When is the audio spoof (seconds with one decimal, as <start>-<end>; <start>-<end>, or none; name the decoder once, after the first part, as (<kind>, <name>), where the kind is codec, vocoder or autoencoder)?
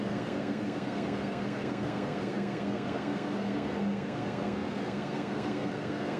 0.0-6.2 (codec, SNAC)